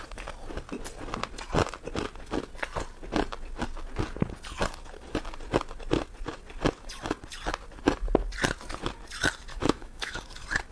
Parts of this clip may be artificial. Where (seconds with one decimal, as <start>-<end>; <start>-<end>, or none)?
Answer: 9.5-10.2